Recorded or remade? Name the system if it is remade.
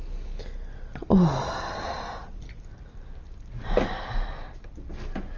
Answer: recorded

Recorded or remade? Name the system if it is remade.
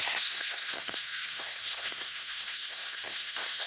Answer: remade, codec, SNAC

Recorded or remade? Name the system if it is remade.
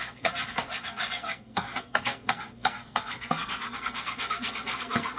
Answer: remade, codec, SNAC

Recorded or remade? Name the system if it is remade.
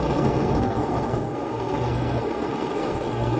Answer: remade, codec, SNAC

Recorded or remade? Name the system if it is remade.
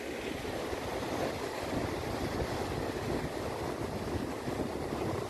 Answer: recorded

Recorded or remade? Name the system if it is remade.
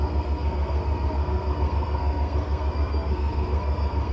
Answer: remade, codec, SNAC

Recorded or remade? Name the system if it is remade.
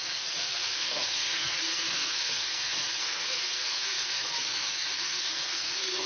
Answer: remade, codec, SNAC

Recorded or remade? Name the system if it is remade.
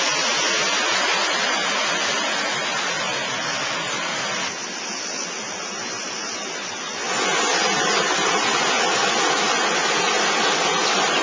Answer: recorded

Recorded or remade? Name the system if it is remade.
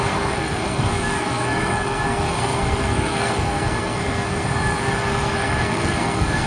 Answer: remade, codec, SNAC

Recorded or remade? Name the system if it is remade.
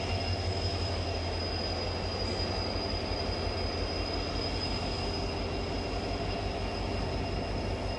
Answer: recorded